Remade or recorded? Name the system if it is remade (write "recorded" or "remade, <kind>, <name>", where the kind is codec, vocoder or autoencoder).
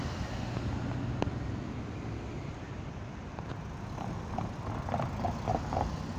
recorded